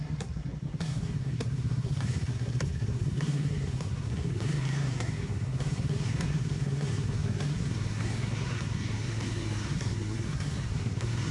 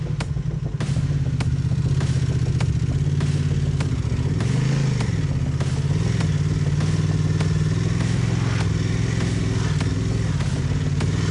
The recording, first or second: second